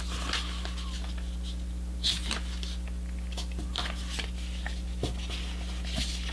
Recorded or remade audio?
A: recorded